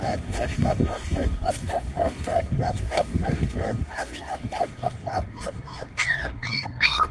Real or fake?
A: fake